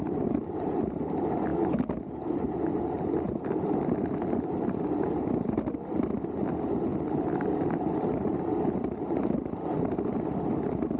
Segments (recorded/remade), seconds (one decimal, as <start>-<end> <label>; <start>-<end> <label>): 0.0-11.0 recorded